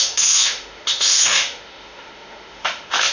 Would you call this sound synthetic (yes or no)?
yes